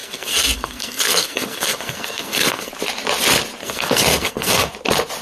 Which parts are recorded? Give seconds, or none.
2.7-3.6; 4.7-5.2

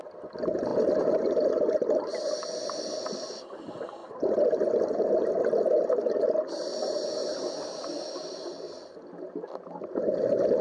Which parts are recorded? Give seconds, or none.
0.0-10.6